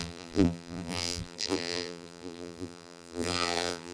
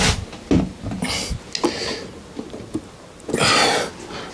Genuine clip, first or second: second